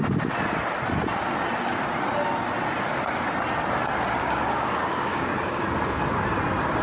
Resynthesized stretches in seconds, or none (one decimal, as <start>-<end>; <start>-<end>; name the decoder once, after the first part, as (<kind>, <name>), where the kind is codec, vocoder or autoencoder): 4.2-5.6 (codec, DAC)